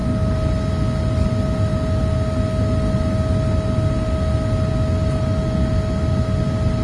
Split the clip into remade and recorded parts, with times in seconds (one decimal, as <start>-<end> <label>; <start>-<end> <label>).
0.0-6.8 recorded